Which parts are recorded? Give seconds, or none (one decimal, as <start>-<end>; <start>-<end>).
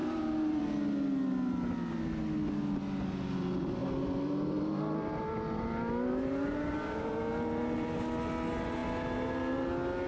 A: 0.6-3.8; 7.1-10.1